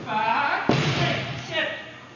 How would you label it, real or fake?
real